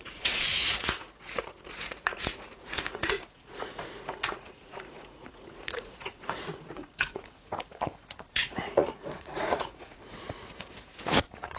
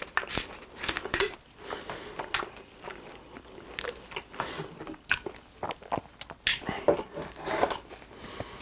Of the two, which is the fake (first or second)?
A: first